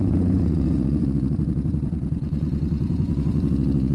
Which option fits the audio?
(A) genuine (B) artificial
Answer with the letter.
B